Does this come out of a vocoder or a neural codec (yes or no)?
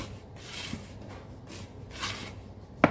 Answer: no